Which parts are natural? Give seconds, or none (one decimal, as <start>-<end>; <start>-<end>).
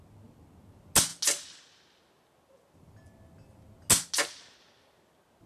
0.0-5.5